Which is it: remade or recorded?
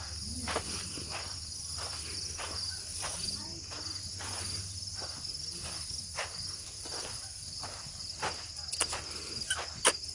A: recorded